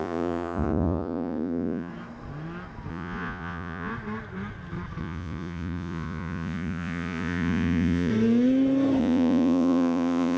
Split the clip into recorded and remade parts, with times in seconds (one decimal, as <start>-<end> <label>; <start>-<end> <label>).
0.0-1.9 remade; 1.9-2.9 recorded; 2.9-3.9 remade; 3.9-5.0 recorded; 5.0-8.1 remade; 8.1-9.0 recorded; 9.0-10.4 remade